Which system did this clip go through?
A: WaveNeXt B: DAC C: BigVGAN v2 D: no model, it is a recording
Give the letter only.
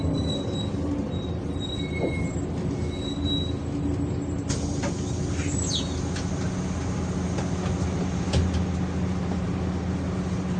D